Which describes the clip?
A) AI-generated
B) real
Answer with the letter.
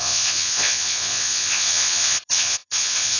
A